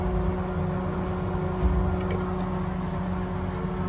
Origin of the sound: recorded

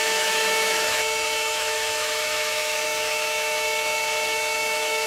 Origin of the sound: remade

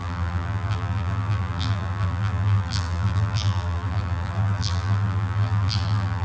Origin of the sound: remade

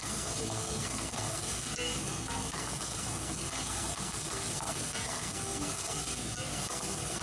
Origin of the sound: remade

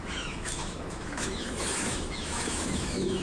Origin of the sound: remade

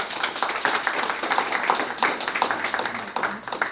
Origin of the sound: recorded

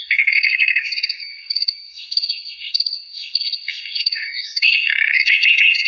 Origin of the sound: remade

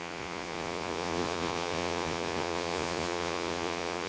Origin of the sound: remade